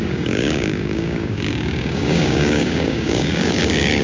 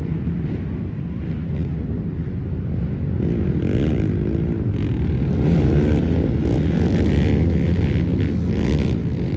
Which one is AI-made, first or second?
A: first